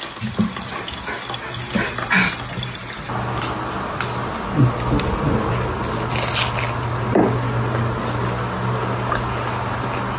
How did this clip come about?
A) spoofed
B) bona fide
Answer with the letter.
B